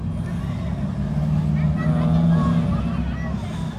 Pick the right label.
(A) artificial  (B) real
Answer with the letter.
B